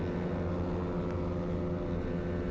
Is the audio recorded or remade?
recorded